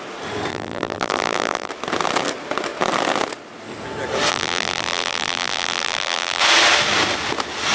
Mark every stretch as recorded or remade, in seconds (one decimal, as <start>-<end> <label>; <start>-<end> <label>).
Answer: 0.0-0.5 recorded; 0.5-1.7 remade; 1.7-4.3 recorded; 4.3-6.4 remade; 6.4-7.7 recorded

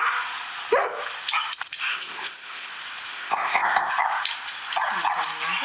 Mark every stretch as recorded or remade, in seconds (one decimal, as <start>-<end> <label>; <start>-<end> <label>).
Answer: 0.0-1.9 recorded; 1.9-2.7 remade; 2.7-3.1 recorded; 3.1-3.9 remade; 3.9-5.6 recorded

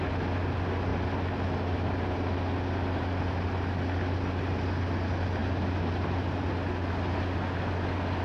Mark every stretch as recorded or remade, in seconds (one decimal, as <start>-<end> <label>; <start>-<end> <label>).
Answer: 0.0-8.2 recorded